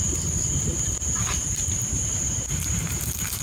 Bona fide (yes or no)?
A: no